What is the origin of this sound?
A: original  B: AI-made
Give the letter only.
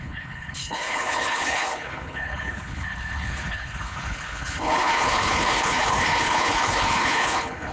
B